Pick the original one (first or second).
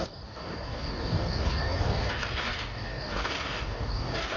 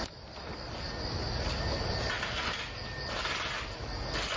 second